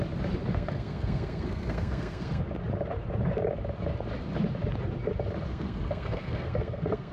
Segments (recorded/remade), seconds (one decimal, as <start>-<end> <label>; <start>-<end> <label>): 0.0-0.5 recorded; 0.5-2.4 remade; 2.4-5.5 recorded; 5.5-7.1 remade